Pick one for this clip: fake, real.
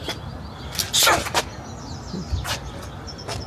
real